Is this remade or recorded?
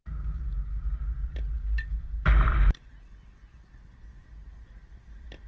recorded